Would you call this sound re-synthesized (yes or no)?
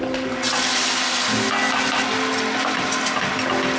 no